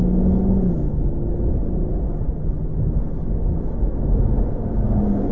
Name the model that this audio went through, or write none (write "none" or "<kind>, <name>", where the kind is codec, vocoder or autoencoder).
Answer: none